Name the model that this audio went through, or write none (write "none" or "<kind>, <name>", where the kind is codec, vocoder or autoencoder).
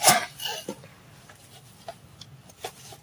none